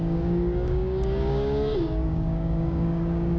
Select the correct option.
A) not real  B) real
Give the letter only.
A